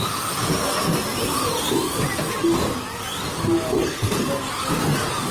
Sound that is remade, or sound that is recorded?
recorded